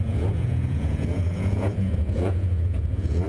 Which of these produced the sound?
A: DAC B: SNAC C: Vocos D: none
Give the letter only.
C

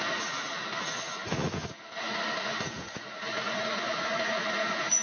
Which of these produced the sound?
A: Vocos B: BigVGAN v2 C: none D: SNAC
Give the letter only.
A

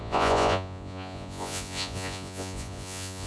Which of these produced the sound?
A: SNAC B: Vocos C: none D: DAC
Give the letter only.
B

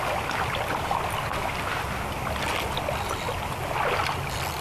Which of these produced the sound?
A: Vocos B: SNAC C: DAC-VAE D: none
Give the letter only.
D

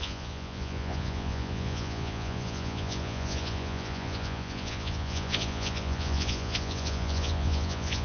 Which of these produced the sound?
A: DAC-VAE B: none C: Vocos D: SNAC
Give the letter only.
C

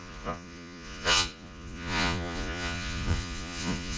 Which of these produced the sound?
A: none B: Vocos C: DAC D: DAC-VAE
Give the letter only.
B